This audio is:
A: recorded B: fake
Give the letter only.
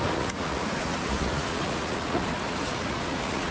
B